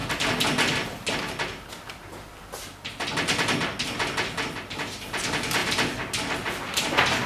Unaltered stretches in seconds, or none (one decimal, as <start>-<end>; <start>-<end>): 0.0-7.3